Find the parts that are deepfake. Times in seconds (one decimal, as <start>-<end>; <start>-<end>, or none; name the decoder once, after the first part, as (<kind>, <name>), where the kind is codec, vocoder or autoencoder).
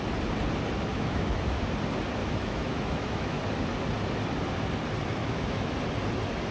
0.9-1.6 (autoencoder, DAC-VAE); 2.2-3.4; 5.2-5.7